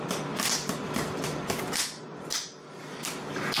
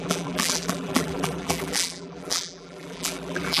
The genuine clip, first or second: first